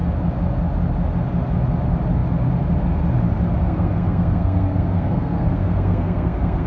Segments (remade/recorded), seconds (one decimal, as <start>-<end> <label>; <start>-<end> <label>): 0.0-3.6 recorded; 3.6-6.7 remade